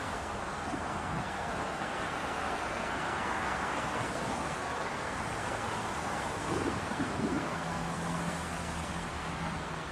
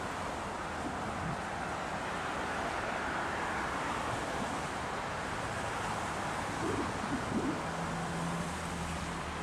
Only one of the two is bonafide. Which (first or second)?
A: second